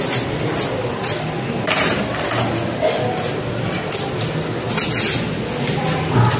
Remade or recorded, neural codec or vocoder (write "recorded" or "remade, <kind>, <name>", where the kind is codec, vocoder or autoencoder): recorded